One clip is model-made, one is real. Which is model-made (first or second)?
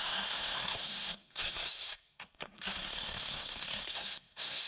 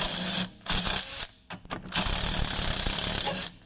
first